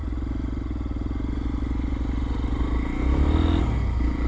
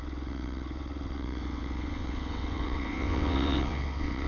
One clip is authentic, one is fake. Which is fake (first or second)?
second